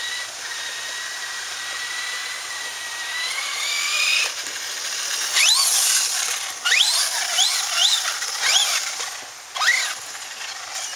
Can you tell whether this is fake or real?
real